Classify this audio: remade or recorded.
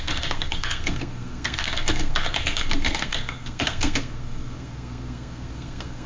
remade